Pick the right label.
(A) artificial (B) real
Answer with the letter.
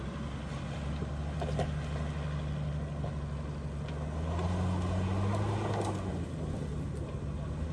B